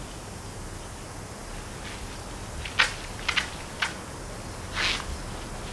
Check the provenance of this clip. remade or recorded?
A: recorded